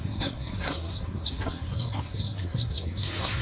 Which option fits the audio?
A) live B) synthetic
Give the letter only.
B